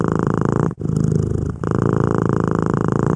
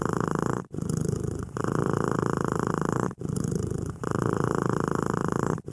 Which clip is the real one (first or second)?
first